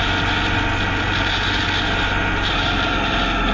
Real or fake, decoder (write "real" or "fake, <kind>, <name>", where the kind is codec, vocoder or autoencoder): real